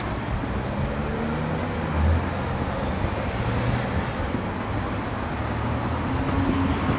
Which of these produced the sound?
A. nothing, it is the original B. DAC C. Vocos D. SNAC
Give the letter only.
A